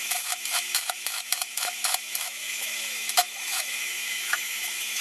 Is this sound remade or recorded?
remade